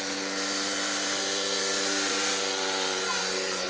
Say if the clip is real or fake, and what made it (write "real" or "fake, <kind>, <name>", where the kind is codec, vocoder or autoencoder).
fake, vocoder, BigVGAN v2